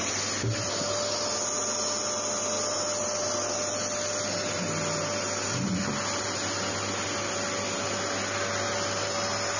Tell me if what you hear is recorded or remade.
recorded